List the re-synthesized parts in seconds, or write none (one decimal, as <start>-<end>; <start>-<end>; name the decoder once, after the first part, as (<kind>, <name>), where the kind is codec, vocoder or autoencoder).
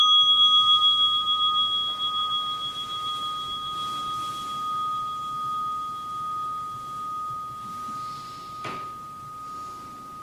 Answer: none